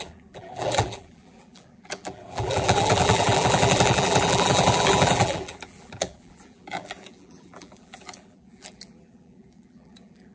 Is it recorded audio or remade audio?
remade